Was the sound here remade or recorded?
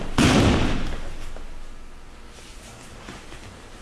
recorded